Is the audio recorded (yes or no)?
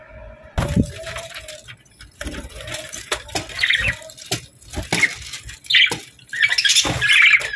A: yes